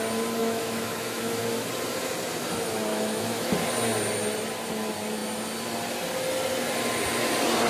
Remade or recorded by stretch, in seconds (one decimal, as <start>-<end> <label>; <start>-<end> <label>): 0.0-0.4 recorded; 0.4-1.4 remade; 1.4-2.9 recorded; 2.9-3.5 remade; 3.5-7.7 recorded